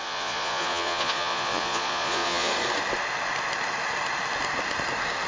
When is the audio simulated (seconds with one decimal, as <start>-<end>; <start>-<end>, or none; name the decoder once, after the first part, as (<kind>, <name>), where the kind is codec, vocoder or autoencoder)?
0.0-2.5 (vocoder, Vocos)